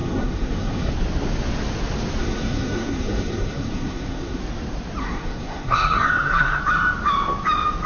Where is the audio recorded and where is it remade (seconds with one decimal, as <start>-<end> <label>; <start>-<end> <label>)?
0.0-0.9 remade; 0.9-2.2 recorded; 2.2-4.4 remade; 4.4-5.0 recorded; 5.0-6.6 remade; 6.6-7.9 recorded